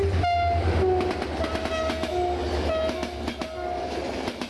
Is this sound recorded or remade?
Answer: recorded